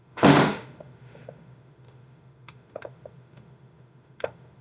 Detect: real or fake fake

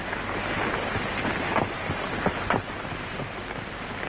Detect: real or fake real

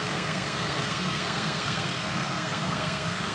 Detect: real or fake fake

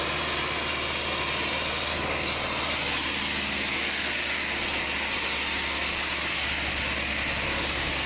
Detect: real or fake real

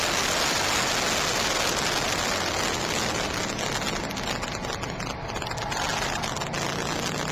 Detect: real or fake real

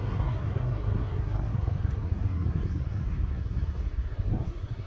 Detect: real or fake fake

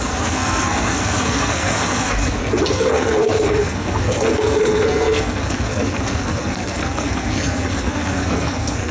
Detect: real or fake fake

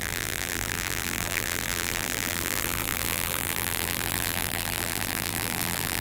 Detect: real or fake fake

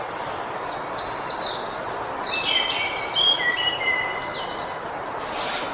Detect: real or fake real